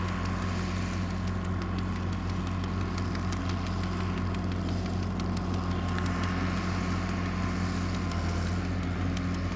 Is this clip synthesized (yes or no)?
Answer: no